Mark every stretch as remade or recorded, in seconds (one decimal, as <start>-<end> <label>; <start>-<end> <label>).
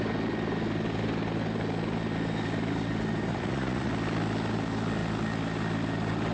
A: 0.0-3.3 recorded; 3.3-3.9 remade; 3.9-6.3 recorded